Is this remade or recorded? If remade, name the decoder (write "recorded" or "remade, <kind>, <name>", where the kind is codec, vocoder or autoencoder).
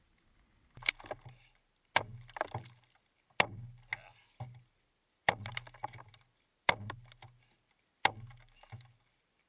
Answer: recorded